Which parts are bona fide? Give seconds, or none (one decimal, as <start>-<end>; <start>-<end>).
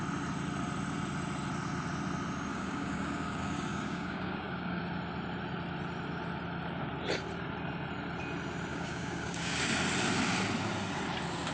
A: 0.0-2.5; 4.8-8.7; 9.7-11.5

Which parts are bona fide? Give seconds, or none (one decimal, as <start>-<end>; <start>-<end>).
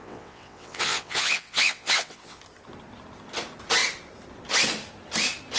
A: 2.4-5.6